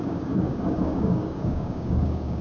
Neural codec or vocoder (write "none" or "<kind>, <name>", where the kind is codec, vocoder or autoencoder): codec, DAC